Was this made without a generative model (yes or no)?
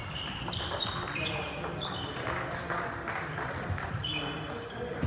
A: yes